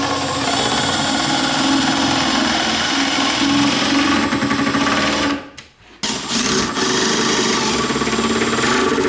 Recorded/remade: recorded